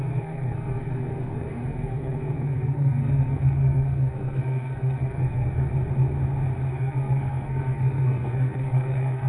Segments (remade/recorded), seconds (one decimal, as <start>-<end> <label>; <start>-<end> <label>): 0.0-5.7 remade; 5.7-6.7 recorded; 6.7-9.3 remade